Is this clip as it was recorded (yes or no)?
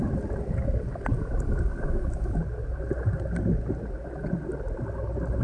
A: yes